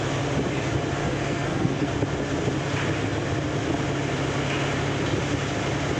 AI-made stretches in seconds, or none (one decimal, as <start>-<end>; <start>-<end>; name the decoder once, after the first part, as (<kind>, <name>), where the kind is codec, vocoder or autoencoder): 1.0-1.9 (codec, SNAC)